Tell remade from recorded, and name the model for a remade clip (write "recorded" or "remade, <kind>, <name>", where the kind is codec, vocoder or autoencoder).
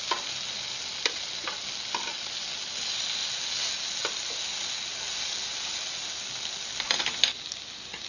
recorded